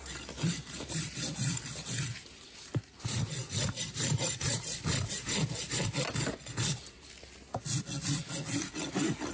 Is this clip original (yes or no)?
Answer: yes